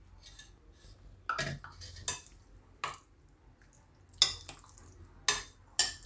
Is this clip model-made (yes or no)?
no